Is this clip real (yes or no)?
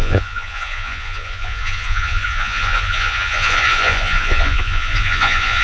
no